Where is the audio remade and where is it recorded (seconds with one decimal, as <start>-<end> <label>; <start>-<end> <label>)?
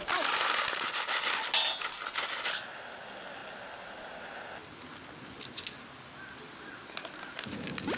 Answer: 0.0-8.0 recorded